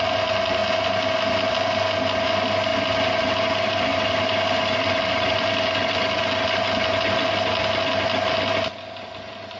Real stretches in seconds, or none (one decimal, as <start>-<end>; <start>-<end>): 0.0-9.6

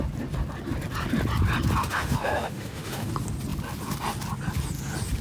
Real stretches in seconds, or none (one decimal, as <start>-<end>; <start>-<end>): 0.0-1.8; 3.1-5.2

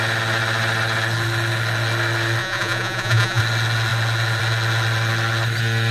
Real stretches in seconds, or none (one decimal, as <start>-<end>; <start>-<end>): 0.0-2.4; 3.4-5.9

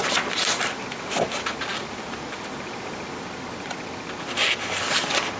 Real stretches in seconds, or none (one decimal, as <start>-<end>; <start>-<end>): 0.0-5.4